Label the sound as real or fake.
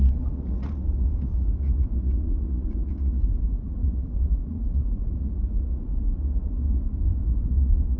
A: fake